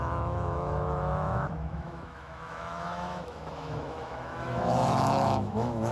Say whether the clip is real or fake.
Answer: fake